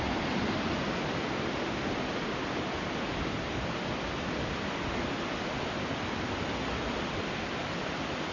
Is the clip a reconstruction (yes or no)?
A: no